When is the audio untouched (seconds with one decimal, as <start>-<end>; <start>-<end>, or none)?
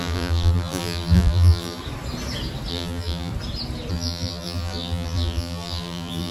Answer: 1.8-2.7; 3.3-3.9